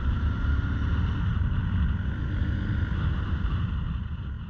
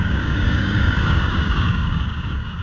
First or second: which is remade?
second